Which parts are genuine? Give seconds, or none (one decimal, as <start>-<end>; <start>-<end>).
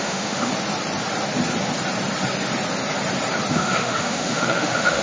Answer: 0.5-3.5